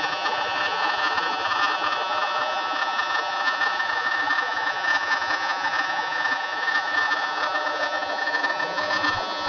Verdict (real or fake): fake